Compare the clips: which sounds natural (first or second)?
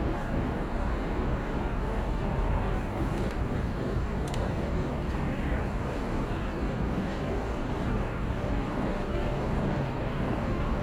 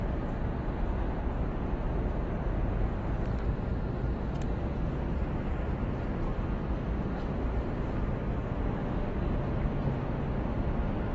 second